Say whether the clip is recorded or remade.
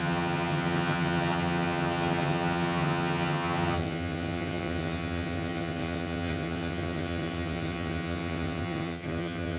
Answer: remade